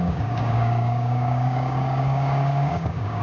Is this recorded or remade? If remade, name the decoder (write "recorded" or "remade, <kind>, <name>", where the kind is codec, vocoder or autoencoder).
remade, codec, DAC